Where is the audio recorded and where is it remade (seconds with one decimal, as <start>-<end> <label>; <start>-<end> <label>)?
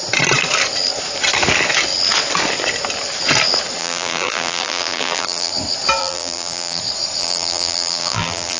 0.0-3.8 recorded; 3.8-5.5 remade; 5.5-6.0 recorded; 6.0-6.8 remade; 6.8-7.2 recorded; 7.2-8.6 remade